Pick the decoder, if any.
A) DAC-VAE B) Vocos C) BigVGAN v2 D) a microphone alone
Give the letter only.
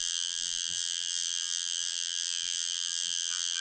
C